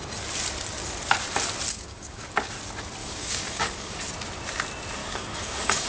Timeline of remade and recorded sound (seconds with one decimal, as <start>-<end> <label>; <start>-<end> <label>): 0.0-1.7 recorded; 1.7-2.2 remade; 2.2-3.0 recorded; 3.0-4.0 remade; 4.0-5.0 recorded; 5.0-5.9 remade